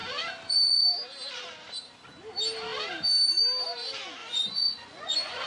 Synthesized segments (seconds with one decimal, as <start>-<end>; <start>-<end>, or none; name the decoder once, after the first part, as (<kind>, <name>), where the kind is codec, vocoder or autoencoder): 4.2-5.5 (vocoder, Vocos)

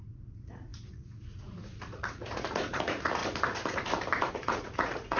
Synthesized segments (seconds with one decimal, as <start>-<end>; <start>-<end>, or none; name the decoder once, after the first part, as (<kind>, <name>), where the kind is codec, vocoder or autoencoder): 0.0-3.2 (vocoder, Vocos); 4.3-5.2

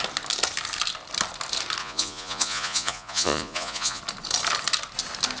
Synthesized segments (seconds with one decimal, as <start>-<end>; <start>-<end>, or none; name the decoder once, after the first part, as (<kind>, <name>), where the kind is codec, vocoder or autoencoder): 1.8-4.0 (vocoder, Vocos)

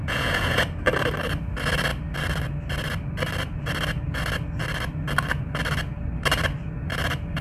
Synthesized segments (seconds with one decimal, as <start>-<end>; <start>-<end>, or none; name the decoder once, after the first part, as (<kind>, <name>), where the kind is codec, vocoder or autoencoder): 0.0-0.6 (vocoder, Vocos)

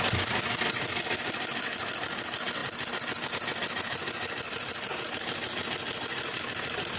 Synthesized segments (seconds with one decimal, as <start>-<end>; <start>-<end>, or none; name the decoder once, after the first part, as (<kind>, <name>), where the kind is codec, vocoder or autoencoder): none